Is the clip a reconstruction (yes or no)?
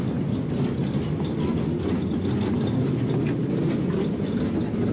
no